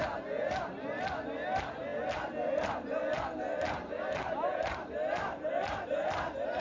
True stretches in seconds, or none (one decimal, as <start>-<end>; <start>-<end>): 0.0-6.6